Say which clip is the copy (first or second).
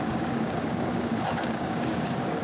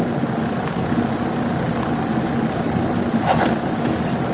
first